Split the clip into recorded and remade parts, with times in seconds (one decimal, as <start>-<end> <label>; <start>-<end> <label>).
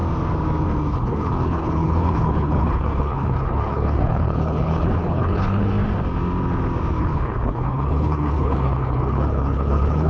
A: 0.0-0.9 recorded; 0.9-5.7 remade; 5.7-7.0 recorded; 7.0-10.1 remade